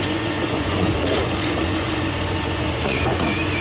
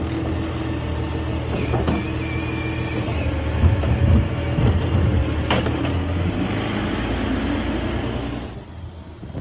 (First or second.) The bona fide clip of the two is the second